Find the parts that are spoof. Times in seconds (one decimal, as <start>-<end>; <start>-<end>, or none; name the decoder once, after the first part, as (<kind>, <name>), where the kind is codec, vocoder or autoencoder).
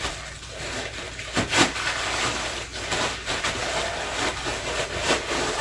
none